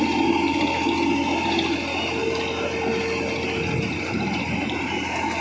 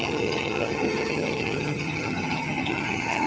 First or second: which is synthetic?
second